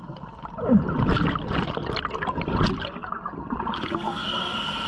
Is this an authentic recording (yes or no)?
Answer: yes